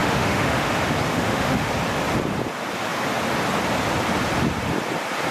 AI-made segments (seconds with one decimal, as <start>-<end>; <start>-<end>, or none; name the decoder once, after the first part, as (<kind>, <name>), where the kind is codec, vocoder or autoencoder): 0.0-0.7 (autoencoder, DAC-VAE); 1.1-1.7